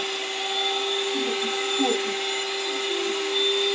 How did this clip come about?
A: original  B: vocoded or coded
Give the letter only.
A